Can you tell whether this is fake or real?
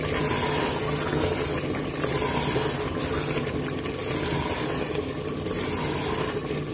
real